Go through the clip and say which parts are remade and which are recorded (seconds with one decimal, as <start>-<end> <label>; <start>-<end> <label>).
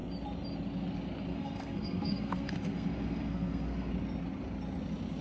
0.0-1.3 recorded; 1.3-3.9 remade; 3.9-5.2 recorded